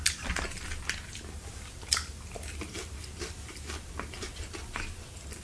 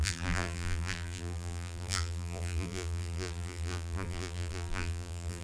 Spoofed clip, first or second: second